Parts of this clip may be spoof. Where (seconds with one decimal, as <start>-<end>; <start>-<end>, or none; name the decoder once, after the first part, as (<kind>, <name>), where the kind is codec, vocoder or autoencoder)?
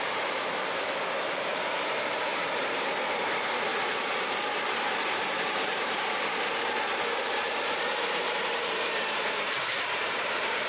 0.0-10.7 (vocoder, BigVGAN v2)